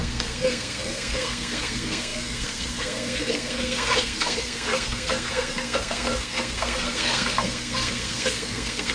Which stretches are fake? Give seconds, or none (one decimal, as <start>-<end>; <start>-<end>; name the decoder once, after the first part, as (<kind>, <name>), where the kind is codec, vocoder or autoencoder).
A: 0.0-8.9 (codec, SNAC)